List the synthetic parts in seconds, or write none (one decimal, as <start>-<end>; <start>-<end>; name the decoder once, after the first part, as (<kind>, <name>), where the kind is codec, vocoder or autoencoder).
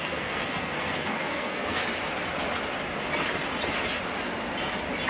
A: 0.0-1.8 (codec, SNAC)